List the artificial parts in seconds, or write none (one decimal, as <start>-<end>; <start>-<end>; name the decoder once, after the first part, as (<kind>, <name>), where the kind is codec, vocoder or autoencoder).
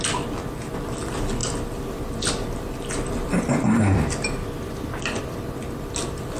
1.4-5.2 (vocoder, BigVGAN v2)